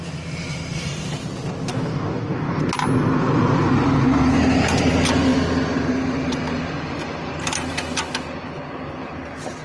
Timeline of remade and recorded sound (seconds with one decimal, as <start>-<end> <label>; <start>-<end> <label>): 0.0-1.7 recorded; 1.7-2.6 remade; 2.6-9.6 recorded

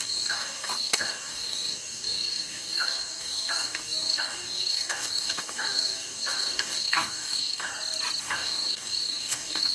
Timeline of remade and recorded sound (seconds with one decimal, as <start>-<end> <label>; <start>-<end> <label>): 0.0-7.7 remade; 7.7-8.2 recorded; 8.2-9.7 remade

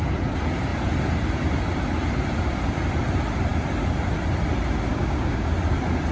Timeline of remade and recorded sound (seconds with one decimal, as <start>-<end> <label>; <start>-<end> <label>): 0.0-4.9 recorded; 4.9-5.5 remade; 5.5-6.1 recorded

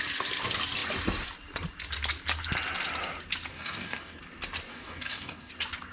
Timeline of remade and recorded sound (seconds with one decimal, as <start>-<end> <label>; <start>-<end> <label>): 0.0-3.5 recorded; 3.5-4.2 remade; 4.2-4.7 recorded; 4.7-5.5 remade; 5.5-5.9 recorded

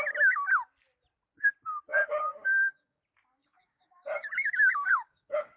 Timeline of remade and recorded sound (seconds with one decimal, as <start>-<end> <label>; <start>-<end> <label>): 0.0-1.9 recorded; 1.9-3.0 remade; 3.0-3.4 recorded; 3.4-5.6 remade

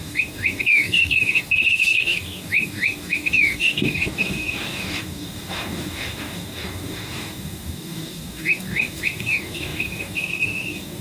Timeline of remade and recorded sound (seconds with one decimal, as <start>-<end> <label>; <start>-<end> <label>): 0.0-11.0 remade

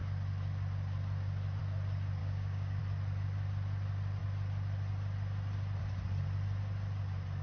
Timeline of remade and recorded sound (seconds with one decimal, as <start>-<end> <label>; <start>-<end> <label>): 0.0-2.2 recorded; 2.2-2.8 remade; 2.8-7.4 recorded

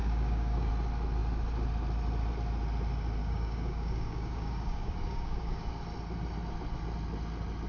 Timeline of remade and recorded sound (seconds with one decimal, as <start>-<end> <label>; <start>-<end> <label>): 0.0-0.7 remade; 0.7-3.2 recorded; 3.2-5.8 remade; 5.8-7.7 recorded